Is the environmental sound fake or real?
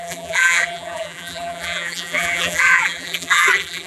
fake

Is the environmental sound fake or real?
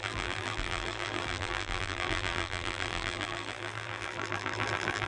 fake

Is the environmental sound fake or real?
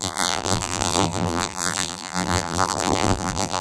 fake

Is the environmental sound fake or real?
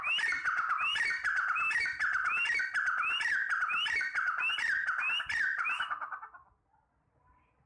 real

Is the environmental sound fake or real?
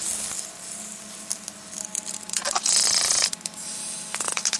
real